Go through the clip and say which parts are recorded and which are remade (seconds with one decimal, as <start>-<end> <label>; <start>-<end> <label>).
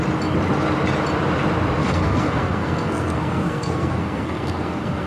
0.0-1.8 recorded; 1.8-5.1 remade